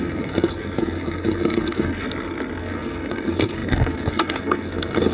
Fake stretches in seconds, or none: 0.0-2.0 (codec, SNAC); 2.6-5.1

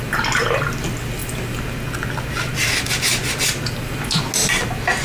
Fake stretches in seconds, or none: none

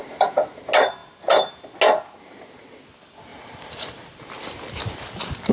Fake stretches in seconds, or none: 0.0-0.5 (vocoder, BigVGAN v2); 3.3-5.5

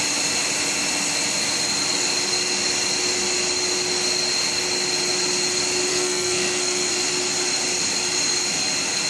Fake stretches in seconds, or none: 5.9-6.9 (codec, SNAC)